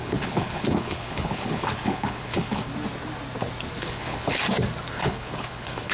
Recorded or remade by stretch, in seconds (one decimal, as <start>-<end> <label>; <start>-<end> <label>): 0.0-2.7 remade; 2.7-3.8 recorded; 3.8-4.4 remade; 4.4-4.9 recorded; 4.9-5.9 remade